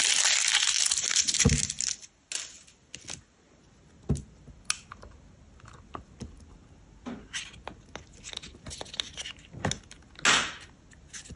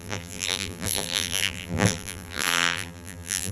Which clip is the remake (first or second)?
second